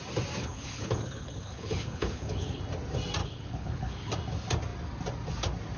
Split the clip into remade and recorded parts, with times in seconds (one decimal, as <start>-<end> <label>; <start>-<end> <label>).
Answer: 0.0-0.4 recorded; 0.4-2.6 remade; 2.6-3.2 recorded; 3.2-4.1 remade; 4.1-5.8 recorded